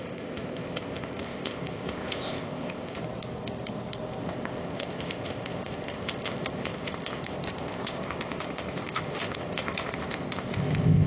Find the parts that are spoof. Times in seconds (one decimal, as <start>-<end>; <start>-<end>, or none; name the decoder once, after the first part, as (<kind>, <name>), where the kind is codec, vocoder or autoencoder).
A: 0.0-3.0 (codec, ZipCodec); 4.2-11.1